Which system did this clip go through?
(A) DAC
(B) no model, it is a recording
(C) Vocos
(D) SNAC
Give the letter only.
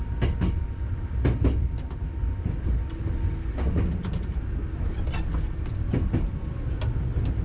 B